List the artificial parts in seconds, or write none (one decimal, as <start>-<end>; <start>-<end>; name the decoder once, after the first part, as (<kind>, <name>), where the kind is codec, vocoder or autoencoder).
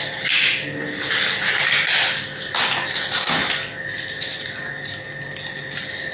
none